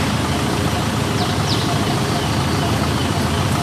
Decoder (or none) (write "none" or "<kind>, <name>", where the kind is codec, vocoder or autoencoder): none